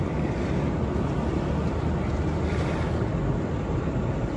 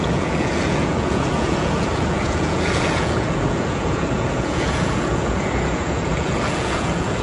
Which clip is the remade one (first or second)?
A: second